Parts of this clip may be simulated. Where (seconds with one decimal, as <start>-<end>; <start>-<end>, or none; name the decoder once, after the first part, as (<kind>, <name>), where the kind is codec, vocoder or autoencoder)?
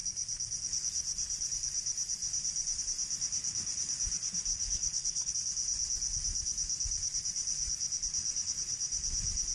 4.5-5.3 (codec, HILCodec)